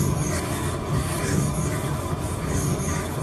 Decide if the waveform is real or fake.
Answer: fake